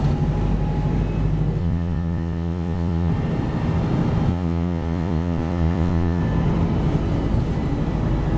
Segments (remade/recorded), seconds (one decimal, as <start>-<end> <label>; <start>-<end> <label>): 0.0-1.6 recorded; 1.6-3.1 remade; 3.1-4.3 recorded; 4.3-6.2 remade; 6.2-8.4 recorded